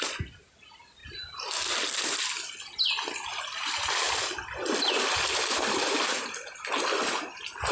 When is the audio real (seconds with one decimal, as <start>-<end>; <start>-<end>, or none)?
0.0-7.7